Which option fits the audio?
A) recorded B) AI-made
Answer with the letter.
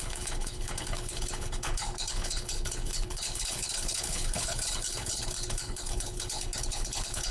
B